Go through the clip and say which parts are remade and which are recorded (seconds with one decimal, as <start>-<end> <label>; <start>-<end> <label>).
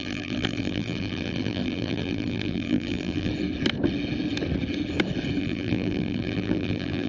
0.0-3.3 remade; 3.3-5.4 recorded; 5.4-7.1 remade